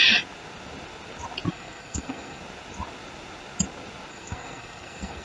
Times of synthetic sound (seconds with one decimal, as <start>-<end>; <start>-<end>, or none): 1.5-2.4; 4.1-5.2

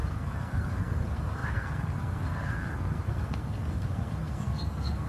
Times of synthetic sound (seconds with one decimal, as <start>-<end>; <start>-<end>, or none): 0.0-5.1

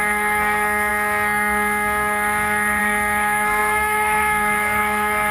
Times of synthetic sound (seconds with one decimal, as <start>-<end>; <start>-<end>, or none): 0.0-5.3

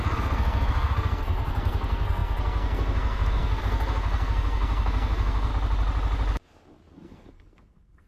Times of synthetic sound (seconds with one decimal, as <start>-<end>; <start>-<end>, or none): 0.0-5.5; 6.9-8.1

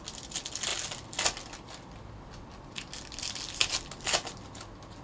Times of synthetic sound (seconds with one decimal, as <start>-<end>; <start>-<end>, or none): none